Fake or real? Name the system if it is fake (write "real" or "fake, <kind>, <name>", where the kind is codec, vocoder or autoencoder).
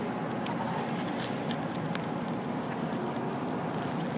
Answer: real